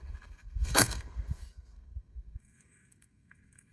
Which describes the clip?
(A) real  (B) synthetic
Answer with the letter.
B